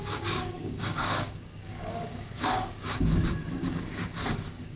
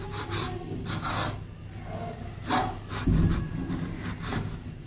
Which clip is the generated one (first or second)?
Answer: first